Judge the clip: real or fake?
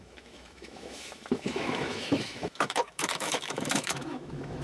fake